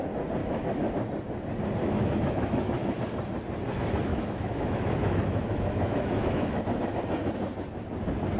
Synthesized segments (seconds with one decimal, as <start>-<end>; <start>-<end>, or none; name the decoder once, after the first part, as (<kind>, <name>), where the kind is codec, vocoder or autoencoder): 0.4-0.9 (autoencoder, DAC-VAE); 1.8-3.0; 4.1-6.8